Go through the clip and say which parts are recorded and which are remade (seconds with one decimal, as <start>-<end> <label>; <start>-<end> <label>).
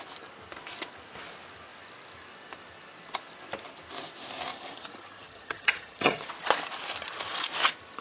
0.0-4.5 recorded; 4.5-6.3 remade; 6.3-8.0 recorded